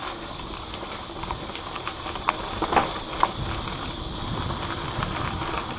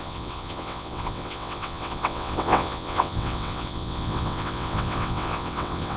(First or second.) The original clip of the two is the first